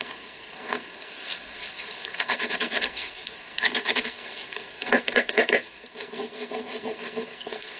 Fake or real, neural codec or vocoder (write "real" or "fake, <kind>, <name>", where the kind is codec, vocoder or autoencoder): fake, codec, SNAC